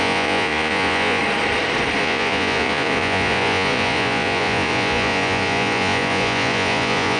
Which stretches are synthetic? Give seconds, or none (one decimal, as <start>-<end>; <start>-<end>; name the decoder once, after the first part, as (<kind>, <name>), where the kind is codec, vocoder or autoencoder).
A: 0.0-1.2 (vocoder, Vocos); 2.0-7.2

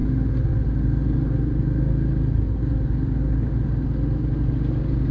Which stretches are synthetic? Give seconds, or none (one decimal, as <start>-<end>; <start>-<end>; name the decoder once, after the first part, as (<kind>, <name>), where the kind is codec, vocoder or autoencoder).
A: none

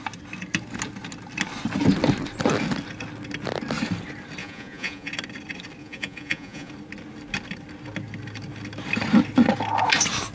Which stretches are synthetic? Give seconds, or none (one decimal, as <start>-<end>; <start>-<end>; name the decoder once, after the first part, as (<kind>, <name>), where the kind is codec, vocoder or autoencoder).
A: 4.4-5.1 (vocoder, Vocos); 5.8-6.7

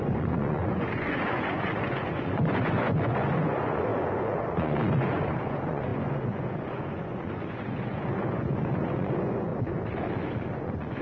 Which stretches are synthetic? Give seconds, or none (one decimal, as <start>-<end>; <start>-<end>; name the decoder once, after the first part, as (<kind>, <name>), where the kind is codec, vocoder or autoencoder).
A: 0.0-9.5 (vocoder, Vocos); 10.6-11.0

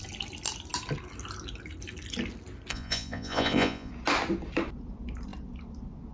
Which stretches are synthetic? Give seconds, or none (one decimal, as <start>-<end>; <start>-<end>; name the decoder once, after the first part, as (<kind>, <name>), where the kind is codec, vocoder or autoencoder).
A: 2.7-3.9 (vocoder, Vocos)